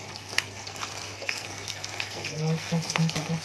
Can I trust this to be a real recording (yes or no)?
no